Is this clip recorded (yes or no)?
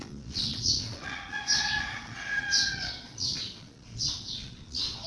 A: no